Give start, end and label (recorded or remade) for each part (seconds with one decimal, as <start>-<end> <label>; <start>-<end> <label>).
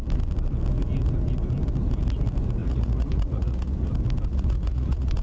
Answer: 0.0-2.6 recorded; 2.6-3.9 remade; 3.9-4.3 recorded; 4.3-5.2 remade